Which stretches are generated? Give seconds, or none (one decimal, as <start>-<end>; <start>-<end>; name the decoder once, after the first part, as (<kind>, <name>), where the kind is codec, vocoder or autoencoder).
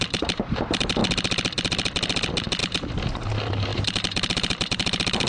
0.0-1.0 (vocoder, BigVGAN v2); 2.6-5.3